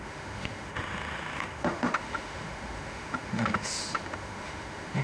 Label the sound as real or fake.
fake